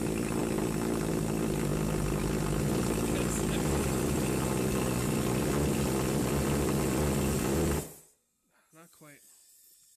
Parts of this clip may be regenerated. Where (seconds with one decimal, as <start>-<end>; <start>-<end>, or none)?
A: none